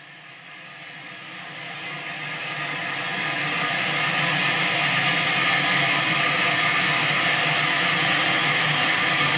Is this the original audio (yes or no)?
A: yes